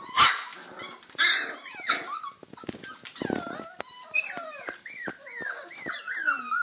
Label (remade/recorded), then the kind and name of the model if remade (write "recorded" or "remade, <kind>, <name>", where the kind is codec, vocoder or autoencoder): recorded